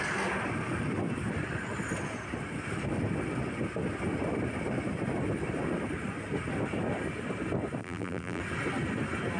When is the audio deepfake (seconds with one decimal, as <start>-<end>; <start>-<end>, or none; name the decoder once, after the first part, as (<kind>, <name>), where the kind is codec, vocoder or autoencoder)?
7.8-8.4 (vocoder, BigVGAN v2)